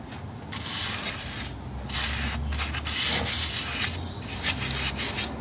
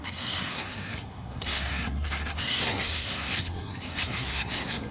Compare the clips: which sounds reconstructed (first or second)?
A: second